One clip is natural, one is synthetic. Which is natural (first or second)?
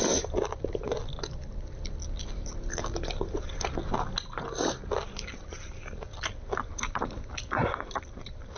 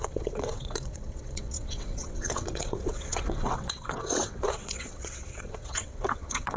first